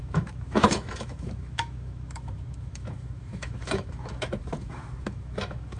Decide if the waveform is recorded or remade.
remade